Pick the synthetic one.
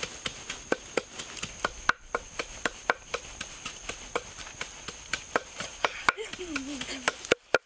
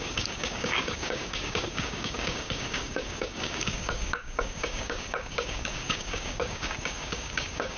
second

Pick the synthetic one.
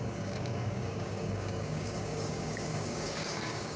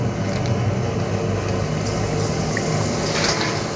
first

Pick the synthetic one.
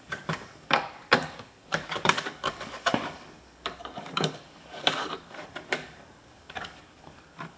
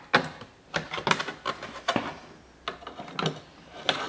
first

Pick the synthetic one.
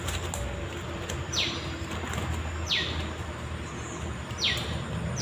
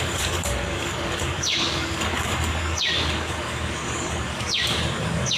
second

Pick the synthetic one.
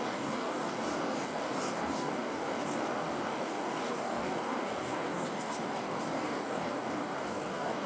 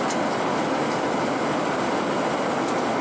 first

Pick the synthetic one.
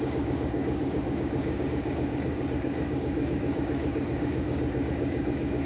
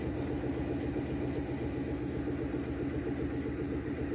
first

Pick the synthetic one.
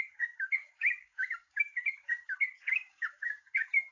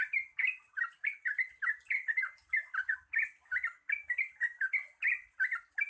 first